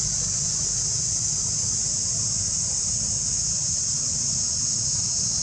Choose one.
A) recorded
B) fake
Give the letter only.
A